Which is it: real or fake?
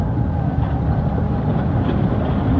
real